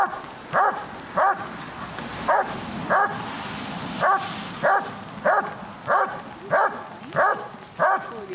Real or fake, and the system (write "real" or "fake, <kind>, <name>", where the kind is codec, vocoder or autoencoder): real